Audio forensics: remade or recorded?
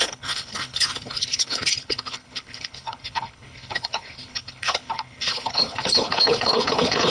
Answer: remade